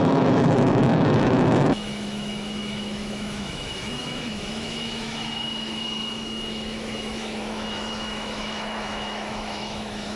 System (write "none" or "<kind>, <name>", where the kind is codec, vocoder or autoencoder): autoencoder, DAC-VAE